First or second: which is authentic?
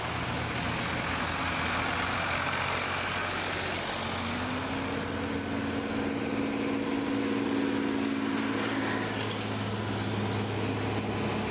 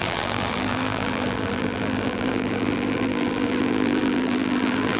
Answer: first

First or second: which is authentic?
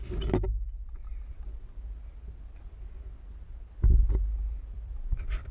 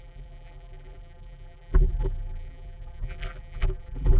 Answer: first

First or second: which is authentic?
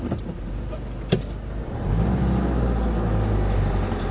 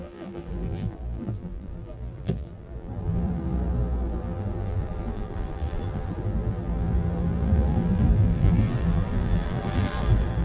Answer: first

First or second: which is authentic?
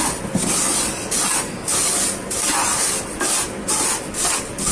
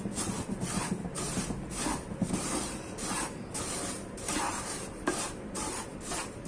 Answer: first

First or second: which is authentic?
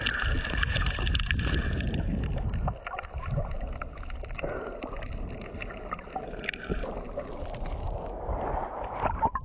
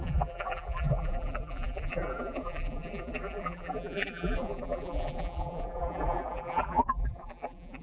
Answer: first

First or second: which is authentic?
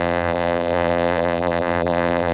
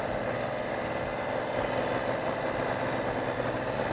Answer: second